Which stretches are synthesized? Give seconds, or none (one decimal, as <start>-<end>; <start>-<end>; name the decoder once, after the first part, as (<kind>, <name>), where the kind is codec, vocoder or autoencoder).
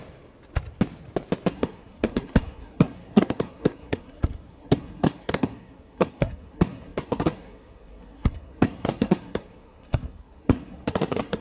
1.5-11.4 (codec, SNAC)